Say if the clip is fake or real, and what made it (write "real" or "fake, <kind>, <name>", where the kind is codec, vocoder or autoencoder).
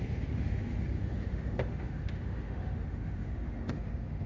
fake, autoencoder, DAC-VAE